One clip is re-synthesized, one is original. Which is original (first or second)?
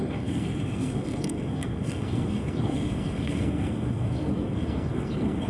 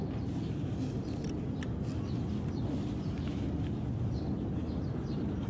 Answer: second